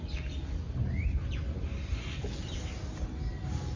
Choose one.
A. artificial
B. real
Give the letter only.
B